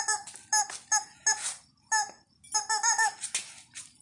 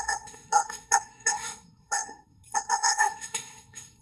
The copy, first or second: second